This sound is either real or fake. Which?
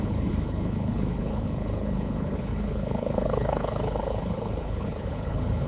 fake